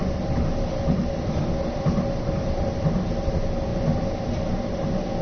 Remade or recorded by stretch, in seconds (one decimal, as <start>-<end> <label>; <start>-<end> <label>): 0.0-5.2 recorded